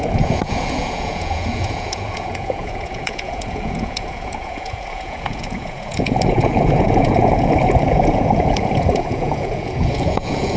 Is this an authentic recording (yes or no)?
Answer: no